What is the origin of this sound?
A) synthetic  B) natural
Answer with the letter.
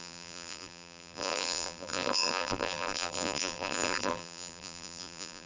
A